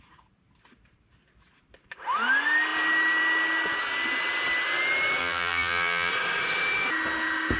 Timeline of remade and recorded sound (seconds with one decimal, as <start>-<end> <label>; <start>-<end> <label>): 0.0-5.2 recorded; 5.2-6.1 remade; 6.1-7.6 recorded